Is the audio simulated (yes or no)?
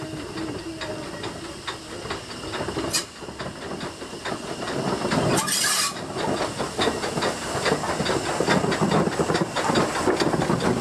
no